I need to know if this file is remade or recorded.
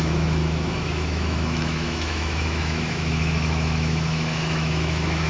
remade